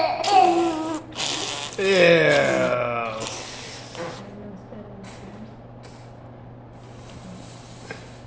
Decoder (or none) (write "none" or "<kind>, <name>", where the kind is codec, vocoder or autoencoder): none